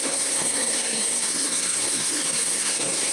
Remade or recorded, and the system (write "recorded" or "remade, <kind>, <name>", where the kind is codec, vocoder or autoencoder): remade, codec, SNAC